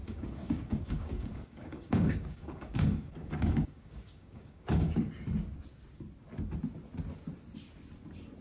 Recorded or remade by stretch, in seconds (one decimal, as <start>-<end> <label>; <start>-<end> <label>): 0.0-5.0 remade; 5.0-8.4 recorded